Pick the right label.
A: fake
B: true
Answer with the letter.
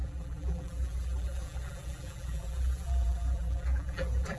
A